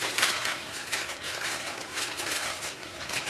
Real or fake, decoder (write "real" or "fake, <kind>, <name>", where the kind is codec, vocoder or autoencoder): fake, codec, SNAC